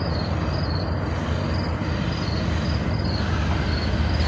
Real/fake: real